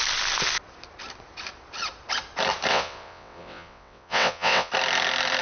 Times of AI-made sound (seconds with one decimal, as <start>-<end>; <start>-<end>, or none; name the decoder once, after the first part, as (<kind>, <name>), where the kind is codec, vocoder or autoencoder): 2.7-4.7 (vocoder, WaveNeXt)